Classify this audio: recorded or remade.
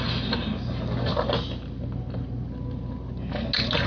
recorded